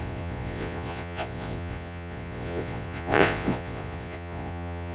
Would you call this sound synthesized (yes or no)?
yes